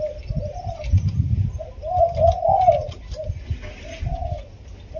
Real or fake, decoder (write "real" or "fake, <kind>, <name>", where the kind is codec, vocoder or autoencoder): real